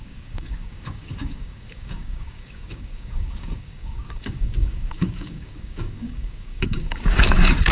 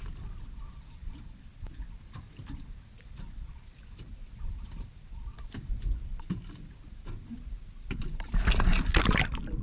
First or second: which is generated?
first